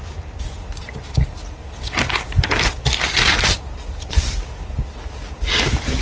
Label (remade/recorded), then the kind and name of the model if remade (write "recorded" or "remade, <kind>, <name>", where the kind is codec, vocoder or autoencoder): recorded